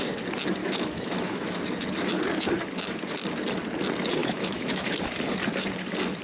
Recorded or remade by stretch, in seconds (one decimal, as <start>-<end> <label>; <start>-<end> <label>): 0.0-0.6 recorded; 0.6-1.6 remade; 1.6-4.2 recorded; 4.2-4.9 remade; 4.9-6.2 recorded

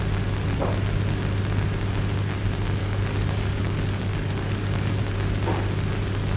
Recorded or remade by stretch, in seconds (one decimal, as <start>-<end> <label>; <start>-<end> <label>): 0.0-2.8 recorded; 2.8-4.9 remade; 4.9-6.4 recorded

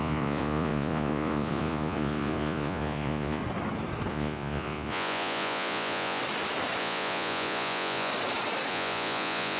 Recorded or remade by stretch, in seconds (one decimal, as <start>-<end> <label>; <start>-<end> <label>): 0.0-3.4 remade; 3.4-4.1 recorded; 4.1-6.2 remade; 6.2-6.8 recorded; 6.8-8.1 remade; 8.1-8.7 recorded; 8.7-9.6 remade

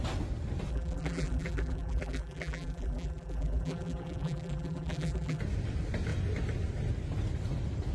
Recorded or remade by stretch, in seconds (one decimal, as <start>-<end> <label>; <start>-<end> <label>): 0.0-0.7 recorded; 0.7-5.4 remade; 5.4-7.9 recorded

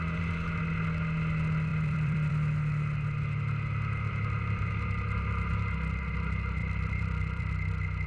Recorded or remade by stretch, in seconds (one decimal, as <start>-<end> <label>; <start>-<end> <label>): 0.0-1.7 recorded; 1.7-2.3 remade; 2.3-6.6 recorded; 6.6-7.5 remade; 7.5-8.1 recorded

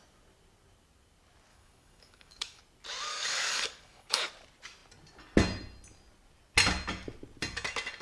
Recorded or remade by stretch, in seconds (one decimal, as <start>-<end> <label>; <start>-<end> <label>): 0.0-1.5 recorded; 1.5-2.6 remade; 2.6-3.1 recorded; 3.1-4.3 remade; 4.3-8.0 recorded